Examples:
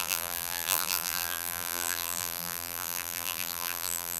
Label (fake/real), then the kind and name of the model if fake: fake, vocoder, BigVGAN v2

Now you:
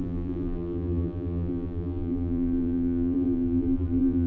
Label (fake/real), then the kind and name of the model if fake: fake, vocoder, BigVGAN v2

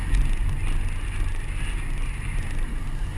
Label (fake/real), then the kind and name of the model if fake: real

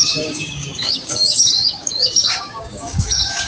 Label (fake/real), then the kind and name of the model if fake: fake, codec, DAC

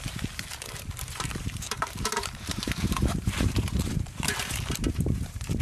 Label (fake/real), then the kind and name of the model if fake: fake, vocoder, BigVGAN v2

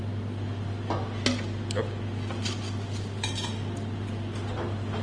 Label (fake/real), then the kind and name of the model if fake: real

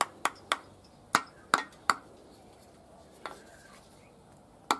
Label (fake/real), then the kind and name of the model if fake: real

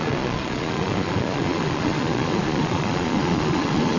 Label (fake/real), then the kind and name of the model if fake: fake, vocoder, Vocos